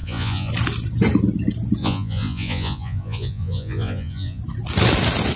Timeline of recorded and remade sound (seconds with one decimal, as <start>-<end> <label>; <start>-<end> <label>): 0.0-0.5 remade; 0.5-1.8 recorded; 1.8-4.4 remade; 4.4-5.4 recorded